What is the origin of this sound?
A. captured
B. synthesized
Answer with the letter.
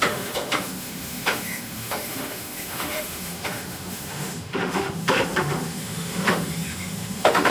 B